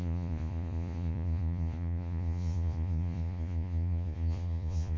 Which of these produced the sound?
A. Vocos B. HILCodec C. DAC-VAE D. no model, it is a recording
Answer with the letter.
A